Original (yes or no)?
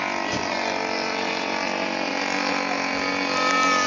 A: yes